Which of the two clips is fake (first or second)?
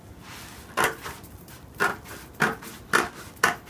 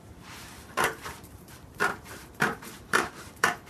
second